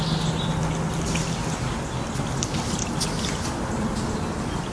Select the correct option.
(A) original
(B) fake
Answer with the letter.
A